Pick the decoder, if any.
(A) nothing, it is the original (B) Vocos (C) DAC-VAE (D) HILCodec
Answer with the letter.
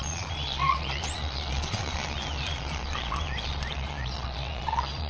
B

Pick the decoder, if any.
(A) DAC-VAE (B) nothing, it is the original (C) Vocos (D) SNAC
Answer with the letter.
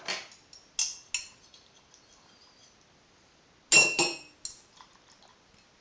B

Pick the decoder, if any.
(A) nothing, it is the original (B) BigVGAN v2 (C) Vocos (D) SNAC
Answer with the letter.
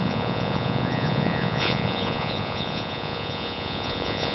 C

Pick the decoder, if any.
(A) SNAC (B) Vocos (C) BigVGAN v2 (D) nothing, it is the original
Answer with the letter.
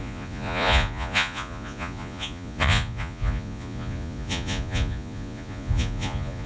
B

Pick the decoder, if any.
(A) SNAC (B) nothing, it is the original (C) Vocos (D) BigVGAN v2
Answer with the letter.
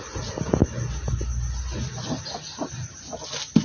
B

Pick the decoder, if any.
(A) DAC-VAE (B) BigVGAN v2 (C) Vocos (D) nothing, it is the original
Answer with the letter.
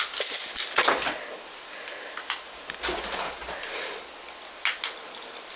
D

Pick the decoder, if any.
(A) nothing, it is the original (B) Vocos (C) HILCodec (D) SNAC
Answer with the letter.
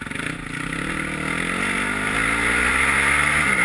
A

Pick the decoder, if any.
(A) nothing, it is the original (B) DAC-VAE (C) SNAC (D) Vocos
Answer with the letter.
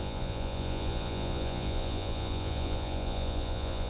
D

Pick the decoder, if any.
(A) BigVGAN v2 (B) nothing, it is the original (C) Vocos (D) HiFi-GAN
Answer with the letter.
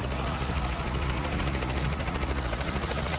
C